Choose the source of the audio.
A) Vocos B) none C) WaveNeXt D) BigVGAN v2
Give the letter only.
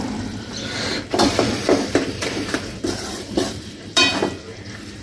D